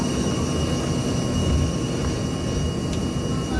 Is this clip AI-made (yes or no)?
no